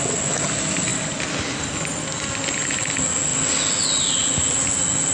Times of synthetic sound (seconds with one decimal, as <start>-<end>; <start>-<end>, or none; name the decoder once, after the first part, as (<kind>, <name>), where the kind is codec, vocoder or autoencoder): none